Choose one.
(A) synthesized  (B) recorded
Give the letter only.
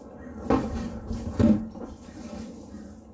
B